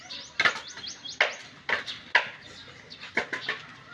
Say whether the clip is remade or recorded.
recorded